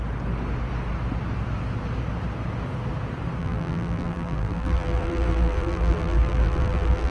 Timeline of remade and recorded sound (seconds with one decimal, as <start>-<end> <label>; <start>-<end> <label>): 0.0-3.4 recorded; 3.4-7.1 remade